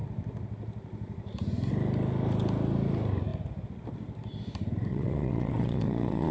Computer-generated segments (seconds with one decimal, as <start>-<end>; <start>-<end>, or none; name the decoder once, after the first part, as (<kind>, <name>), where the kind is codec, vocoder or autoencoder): 4.9-6.3 (vocoder, Vocos)

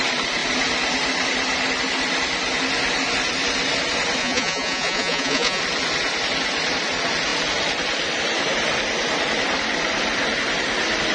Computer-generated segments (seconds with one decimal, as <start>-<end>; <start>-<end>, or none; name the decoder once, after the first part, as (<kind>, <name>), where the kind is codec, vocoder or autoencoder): 4.2-5.6 (vocoder, Vocos)

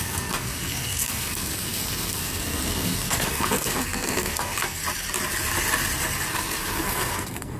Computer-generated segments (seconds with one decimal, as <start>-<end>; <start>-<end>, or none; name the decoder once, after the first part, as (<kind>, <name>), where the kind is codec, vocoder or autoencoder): 0.0-4.8 (codec, SNAC); 6.3-7.6

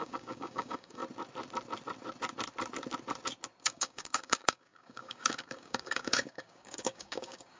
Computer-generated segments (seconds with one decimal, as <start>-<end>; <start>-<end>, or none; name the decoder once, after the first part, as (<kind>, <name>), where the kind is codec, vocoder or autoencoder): 0.0-1.0 (codec, DAC); 3.6-7.6

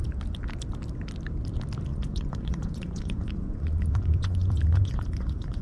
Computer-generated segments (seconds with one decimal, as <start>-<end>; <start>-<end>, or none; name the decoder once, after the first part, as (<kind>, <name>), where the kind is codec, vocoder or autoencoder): 1.9-5.6 (vocoder, Vocos)

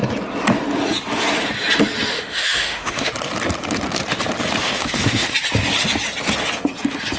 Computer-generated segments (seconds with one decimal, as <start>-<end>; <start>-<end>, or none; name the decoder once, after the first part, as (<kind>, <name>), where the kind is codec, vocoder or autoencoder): 2.1-3.1 (autoencoder, DAC-VAE); 4.6-5.3

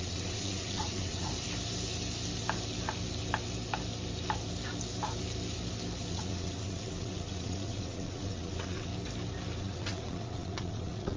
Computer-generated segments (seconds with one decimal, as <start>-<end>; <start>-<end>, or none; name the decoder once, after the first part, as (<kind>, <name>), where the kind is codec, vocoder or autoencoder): 0.0-1.3 (vocoder, WaveNeXt); 6.1-8.9; 9.6-11.2